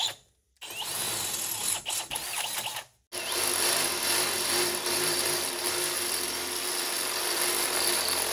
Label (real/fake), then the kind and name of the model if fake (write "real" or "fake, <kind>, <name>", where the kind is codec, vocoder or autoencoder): real